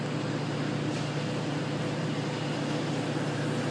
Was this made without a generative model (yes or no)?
yes